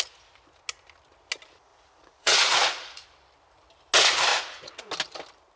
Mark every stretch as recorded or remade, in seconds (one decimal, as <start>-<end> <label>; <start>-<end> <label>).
0.0-1.7 recorded; 1.7-3.0 remade; 3.0-4.3 recorded; 4.3-4.9 remade; 4.9-5.6 recorded